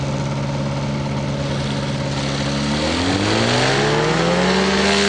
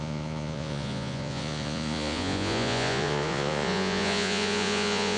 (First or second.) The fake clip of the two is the second